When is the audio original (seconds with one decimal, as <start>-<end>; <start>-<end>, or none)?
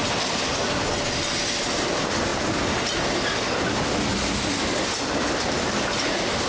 0.0-6.5